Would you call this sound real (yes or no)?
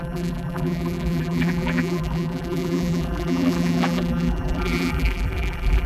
no